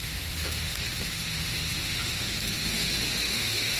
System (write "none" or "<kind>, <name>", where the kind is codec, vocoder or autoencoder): autoencoder, DAC-VAE